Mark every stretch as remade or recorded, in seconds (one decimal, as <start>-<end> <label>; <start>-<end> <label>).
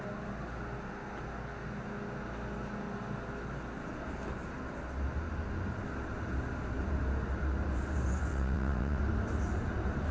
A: 0.0-8.3 recorded; 8.3-9.0 remade; 9.0-10.1 recorded